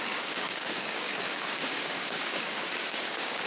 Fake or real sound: fake